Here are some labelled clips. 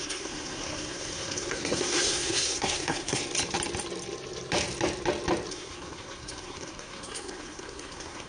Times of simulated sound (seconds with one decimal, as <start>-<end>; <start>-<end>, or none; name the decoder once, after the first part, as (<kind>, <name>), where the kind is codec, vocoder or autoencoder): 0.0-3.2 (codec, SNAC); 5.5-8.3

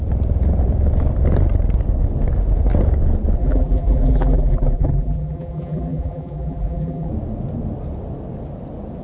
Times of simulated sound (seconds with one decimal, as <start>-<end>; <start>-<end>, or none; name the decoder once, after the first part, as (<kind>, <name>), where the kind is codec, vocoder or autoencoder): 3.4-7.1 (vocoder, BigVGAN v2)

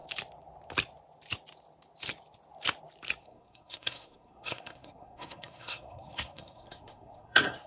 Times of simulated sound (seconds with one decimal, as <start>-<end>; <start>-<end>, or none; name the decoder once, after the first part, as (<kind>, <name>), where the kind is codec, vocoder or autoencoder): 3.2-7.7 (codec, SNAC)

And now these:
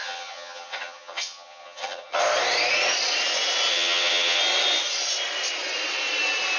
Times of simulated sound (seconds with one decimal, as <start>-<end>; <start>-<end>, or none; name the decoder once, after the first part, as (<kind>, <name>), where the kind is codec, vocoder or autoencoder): 0.0-2.2 (vocoder, HiFi-GAN); 3.7-4.4

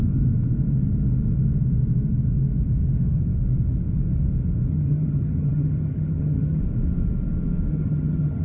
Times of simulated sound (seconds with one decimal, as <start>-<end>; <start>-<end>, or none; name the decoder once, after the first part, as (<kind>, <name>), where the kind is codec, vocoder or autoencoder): 4.7-6.6 (vocoder, HiFi-GAN); 7.7-8.4

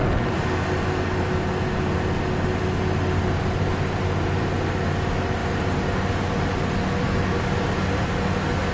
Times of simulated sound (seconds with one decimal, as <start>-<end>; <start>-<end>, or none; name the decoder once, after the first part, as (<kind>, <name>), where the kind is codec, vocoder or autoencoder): none

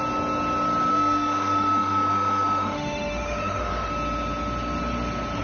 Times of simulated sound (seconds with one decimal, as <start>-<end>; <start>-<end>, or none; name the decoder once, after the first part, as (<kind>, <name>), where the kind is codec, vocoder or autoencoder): 0.9-3.9 (autoencoder, DAC-VAE)

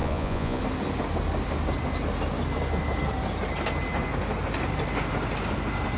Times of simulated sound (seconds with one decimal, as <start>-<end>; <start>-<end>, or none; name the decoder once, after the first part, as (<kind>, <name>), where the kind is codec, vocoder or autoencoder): 0.0-0.6 (vocoder, Vocos)